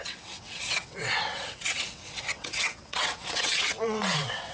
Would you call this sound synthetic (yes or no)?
yes